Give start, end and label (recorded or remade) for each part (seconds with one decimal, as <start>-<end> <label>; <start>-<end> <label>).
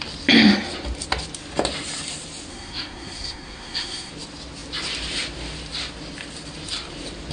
0.0-2.5 recorded; 2.5-4.1 remade; 4.1-7.3 recorded